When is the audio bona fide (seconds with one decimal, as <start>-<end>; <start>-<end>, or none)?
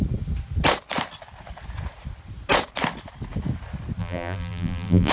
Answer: 0.0-4.0